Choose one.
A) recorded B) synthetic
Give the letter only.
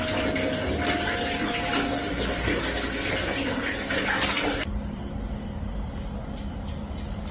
A